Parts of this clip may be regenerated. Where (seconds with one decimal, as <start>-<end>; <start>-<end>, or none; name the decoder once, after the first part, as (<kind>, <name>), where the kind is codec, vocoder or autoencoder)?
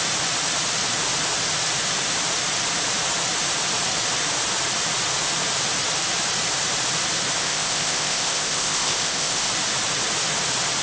7.4-9.5 (codec, ZipCodec)